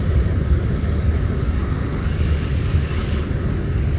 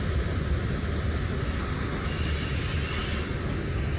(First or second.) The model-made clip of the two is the first